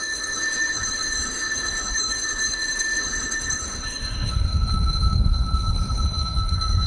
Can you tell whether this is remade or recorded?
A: remade